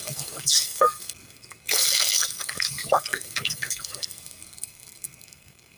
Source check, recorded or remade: remade